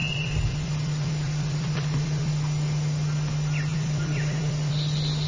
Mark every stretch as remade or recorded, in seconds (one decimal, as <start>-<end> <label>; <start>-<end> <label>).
0.0-2.3 remade; 2.3-3.7 recorded; 3.7-4.7 remade; 4.7-5.3 recorded